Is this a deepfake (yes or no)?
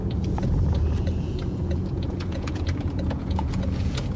yes